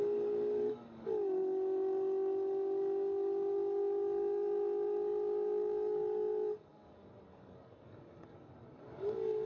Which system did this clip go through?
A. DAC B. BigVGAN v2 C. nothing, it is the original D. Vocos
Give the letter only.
A